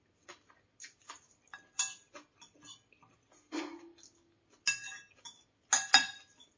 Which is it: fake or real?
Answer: real